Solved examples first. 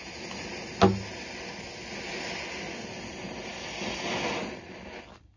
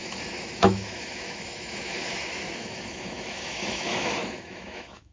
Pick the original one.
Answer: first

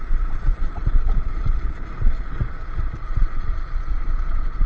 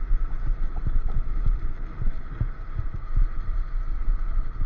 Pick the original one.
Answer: second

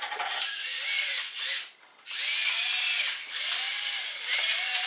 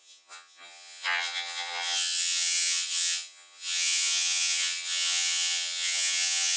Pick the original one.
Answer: first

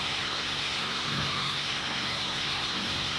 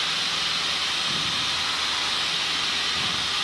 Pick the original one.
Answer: second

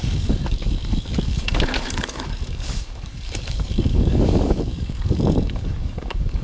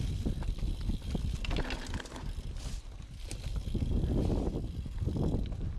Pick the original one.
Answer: second